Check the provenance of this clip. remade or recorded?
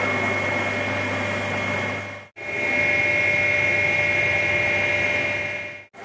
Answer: recorded